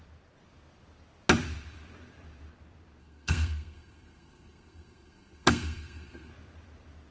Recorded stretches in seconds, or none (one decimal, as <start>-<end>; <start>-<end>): 0.0-3.0; 6.3-7.1